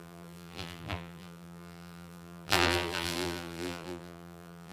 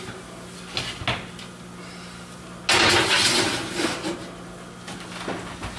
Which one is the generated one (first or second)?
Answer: first